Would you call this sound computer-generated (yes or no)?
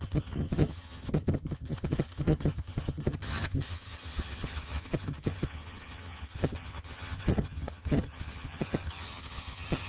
yes